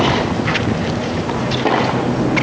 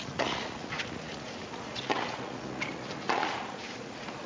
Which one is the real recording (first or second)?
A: first